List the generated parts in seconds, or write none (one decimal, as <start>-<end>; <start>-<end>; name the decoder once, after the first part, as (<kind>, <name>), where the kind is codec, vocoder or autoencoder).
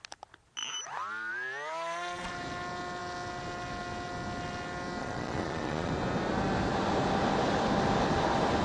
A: 5.0-5.9 (vocoder, Vocos)